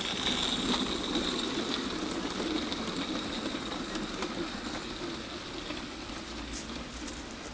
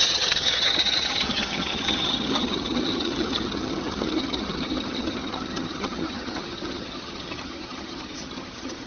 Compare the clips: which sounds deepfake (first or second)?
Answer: second